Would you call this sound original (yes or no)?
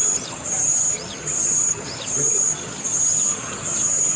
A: no